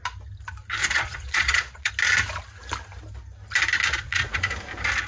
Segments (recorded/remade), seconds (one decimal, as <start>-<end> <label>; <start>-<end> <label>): 0.0-0.8 recorded; 0.8-1.9 remade; 1.9-3.9 recorded; 3.9-4.5 remade; 4.5-5.1 recorded